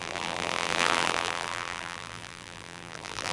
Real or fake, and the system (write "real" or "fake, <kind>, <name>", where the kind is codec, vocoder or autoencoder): fake, vocoder, BigVGAN v2